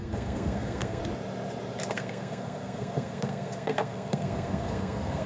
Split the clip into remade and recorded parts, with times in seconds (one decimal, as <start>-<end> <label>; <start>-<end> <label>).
0.0-1.0 remade; 1.0-1.9 recorded; 1.9-5.3 remade